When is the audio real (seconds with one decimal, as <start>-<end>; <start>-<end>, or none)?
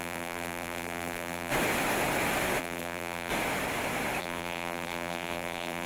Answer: 1.5-2.6; 3.3-4.2